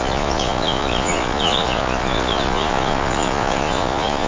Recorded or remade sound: remade